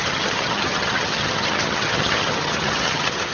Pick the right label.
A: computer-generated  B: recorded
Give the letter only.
A